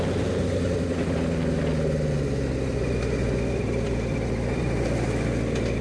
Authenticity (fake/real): real